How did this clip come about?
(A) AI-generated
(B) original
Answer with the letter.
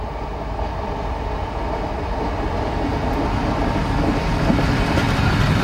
B